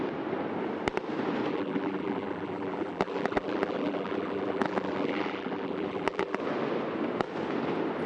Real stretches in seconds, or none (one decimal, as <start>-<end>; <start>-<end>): 0.0-1.5; 6.4-8.1